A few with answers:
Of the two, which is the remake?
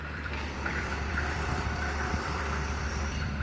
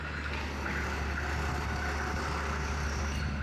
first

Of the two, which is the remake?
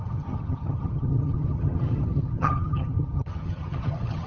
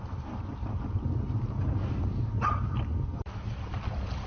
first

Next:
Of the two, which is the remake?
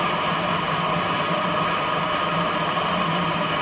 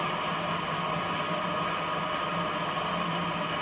first